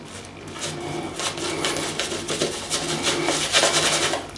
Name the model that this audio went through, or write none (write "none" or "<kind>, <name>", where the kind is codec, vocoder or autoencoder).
none